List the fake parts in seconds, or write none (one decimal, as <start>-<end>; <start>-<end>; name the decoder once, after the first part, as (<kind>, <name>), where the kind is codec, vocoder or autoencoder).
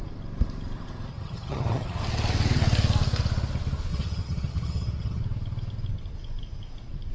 1.1-2.0 (vocoder, HiFi-GAN); 3.9-5.2